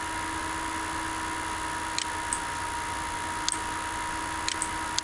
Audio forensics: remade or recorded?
recorded